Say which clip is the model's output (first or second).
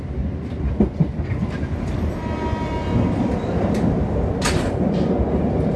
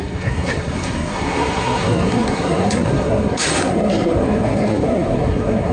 second